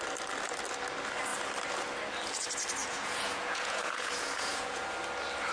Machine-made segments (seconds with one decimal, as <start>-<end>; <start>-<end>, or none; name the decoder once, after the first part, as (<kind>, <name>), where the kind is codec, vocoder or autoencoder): 2.8-4.8 (vocoder, Vocos)